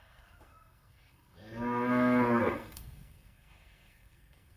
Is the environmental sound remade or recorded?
remade